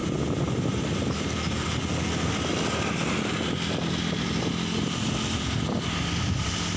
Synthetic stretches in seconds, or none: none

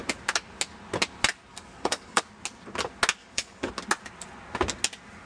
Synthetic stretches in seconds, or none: 1.5-2.2 (codec, DAC); 3.2-3.7

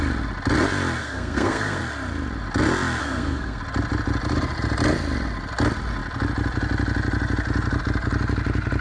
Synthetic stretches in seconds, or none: 1.0-1.8 (codec, SNAC); 3.0-3.6

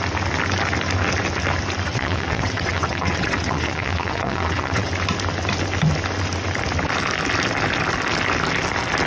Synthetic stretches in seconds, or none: 1.9-4.9 (vocoder, WaveNeXt)

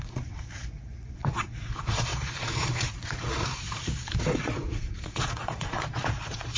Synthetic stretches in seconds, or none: 0.0-6.6 (vocoder, Vocos)

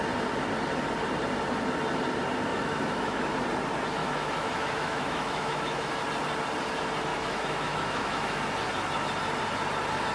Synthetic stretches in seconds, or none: 2.5-3.3 (autoencoder, DAC-VAE); 4.0-5.9; 7.1-8.4